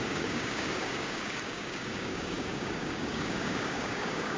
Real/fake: fake